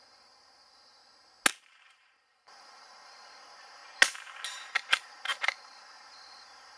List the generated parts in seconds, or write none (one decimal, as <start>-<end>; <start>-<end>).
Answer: 0.0-1.0; 1.7-3.8; 4.7-6.8